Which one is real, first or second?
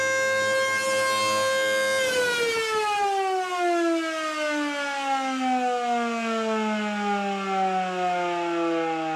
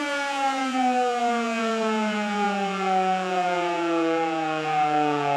first